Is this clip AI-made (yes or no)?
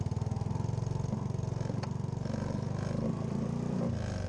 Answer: no